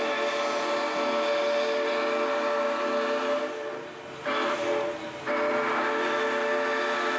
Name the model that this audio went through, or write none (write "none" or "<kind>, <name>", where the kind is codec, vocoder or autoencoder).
none